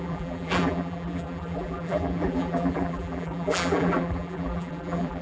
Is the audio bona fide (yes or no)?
no